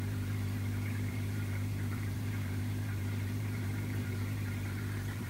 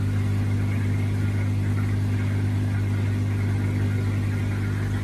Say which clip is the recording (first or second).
second